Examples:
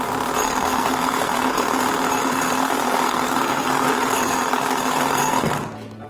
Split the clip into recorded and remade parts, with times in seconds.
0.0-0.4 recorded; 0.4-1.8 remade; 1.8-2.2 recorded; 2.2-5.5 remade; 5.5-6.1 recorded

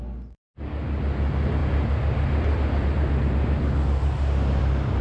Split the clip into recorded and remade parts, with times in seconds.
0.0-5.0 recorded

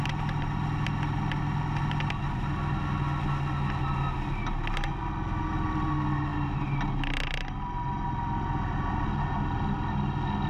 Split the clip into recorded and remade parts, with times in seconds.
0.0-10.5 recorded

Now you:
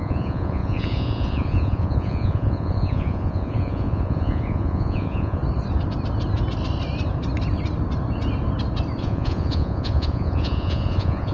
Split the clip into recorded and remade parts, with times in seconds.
0.0-5.4 remade; 5.4-9.0 recorded; 9.0-11.3 remade